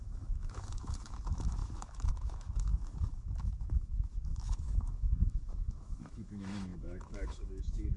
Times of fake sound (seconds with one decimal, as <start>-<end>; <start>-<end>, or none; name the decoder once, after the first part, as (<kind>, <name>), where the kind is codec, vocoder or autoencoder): 0.0-8.0 (autoencoder, DAC-VAE)